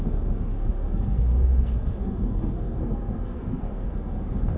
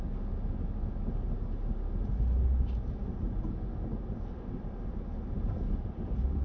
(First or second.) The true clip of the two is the second